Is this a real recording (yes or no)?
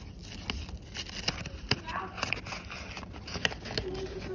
yes